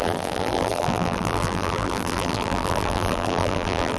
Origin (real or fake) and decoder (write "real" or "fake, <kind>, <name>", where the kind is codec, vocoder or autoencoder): fake, vocoder, BigVGAN v2